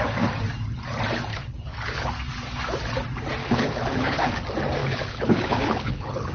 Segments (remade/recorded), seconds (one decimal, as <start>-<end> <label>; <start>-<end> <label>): 0.0-1.3 recorded; 1.3-2.1 remade; 2.1-3.4 recorded; 3.4-4.3 remade; 4.3-4.8 recorded; 4.8-6.3 remade